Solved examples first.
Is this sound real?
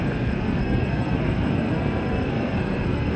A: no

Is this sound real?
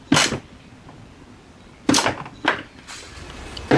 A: yes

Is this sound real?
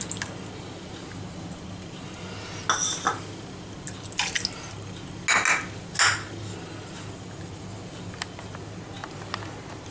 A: yes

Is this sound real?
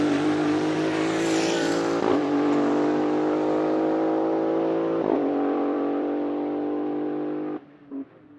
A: no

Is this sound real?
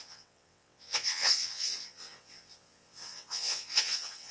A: no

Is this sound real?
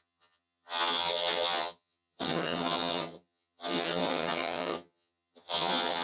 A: no